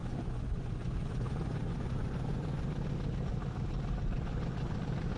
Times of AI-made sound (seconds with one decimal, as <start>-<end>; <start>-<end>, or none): 0.0-2.7; 4.3-4.8